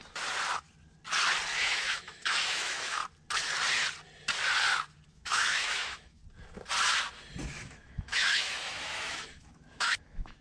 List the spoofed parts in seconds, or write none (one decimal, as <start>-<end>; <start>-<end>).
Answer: 1.6-3.0; 5.1-6.2; 7.5-10.4